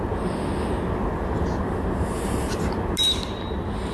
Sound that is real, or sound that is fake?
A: real